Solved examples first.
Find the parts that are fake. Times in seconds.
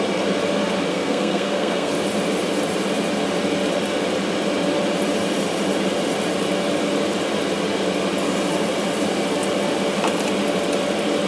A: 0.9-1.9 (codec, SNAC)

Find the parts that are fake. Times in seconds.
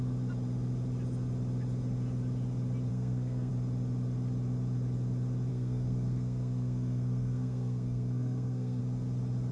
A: 2.9-3.5 (codec, SNAC); 5.5-8.8